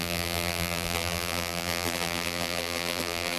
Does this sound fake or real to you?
fake